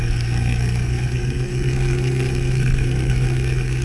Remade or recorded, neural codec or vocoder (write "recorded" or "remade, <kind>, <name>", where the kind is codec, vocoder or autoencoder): remade, codec, SNAC